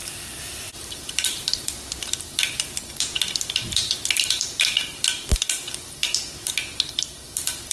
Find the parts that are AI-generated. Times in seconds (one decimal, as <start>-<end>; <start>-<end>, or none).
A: none